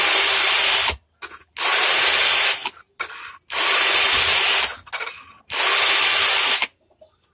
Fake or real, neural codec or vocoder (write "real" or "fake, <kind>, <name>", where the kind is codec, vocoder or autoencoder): real